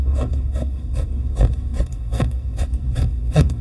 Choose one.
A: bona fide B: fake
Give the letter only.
B